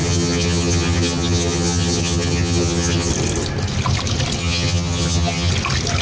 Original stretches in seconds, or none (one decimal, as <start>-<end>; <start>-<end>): 3.1-4.4; 5.5-6.0